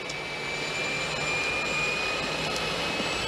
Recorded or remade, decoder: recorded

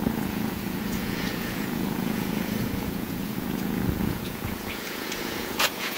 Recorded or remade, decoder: remade, vocoder, Vocos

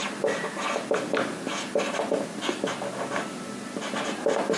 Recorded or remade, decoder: recorded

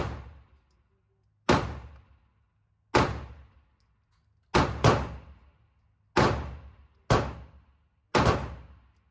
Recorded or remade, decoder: recorded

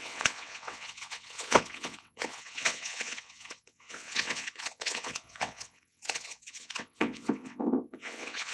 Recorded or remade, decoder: remade, vocoder, WaveNeXt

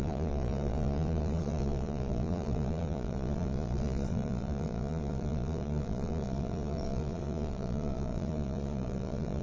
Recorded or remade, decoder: remade, vocoder, Vocos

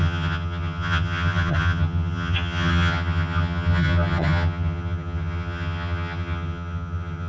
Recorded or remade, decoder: remade, vocoder, HiFi-GAN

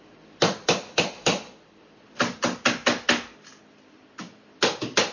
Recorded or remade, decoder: recorded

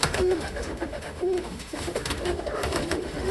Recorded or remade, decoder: remade, autoencoder, DAC-VAE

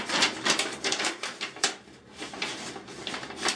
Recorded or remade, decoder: recorded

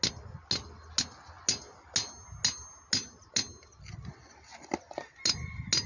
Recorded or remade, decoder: recorded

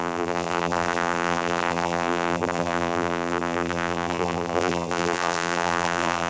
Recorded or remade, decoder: remade, vocoder, BigVGAN v2